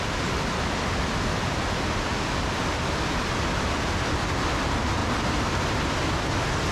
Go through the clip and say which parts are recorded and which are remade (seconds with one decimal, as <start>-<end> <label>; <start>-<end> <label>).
0.0-6.7 recorded